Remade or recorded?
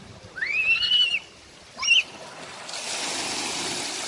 recorded